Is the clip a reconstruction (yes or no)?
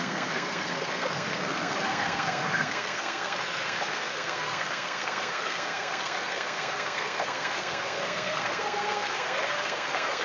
yes